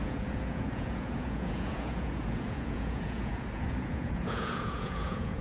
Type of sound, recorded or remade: remade